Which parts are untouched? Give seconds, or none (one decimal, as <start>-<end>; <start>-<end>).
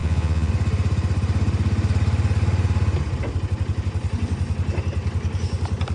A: 0.5-5.9